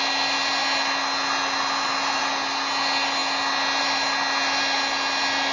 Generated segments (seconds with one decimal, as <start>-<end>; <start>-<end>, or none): none